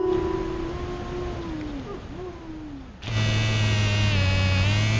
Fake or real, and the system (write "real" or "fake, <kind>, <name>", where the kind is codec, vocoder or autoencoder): real